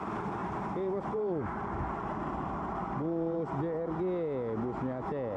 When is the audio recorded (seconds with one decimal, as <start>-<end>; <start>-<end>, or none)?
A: 0.0-0.4; 3.6-5.4